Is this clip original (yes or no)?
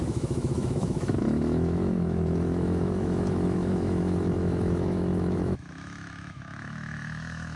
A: no